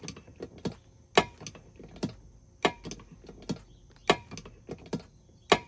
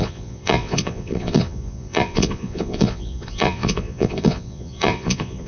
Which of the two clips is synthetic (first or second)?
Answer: second